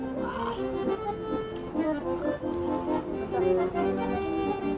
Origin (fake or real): real